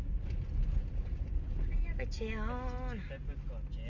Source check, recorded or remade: recorded